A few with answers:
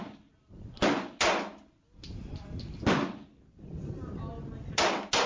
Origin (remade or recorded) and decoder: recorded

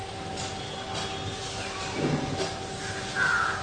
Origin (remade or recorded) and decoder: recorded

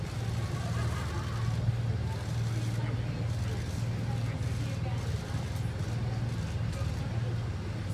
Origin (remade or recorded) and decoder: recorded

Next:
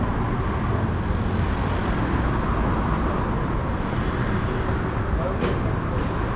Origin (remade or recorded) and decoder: recorded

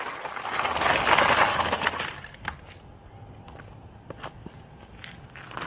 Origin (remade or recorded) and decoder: recorded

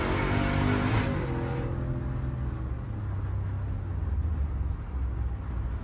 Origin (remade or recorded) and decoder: recorded